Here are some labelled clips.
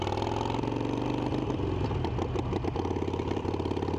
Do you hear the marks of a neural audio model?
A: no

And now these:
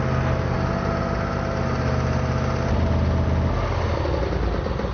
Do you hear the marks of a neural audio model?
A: no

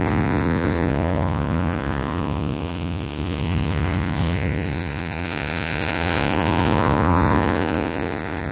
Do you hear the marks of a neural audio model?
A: yes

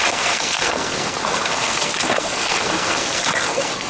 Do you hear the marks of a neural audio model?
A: yes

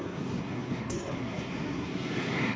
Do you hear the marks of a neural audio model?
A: yes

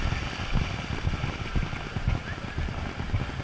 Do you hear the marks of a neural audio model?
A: no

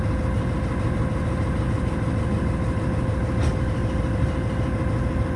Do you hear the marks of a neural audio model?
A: no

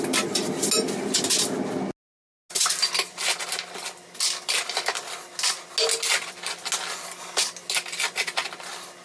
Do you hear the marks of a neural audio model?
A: no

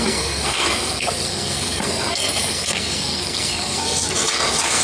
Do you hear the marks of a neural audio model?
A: yes